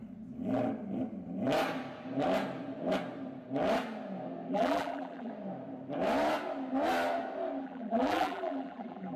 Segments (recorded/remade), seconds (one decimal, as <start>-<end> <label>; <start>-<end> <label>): 0.0-4.5 recorded; 4.5-5.3 remade; 5.3-7.6 recorded; 7.6-9.2 remade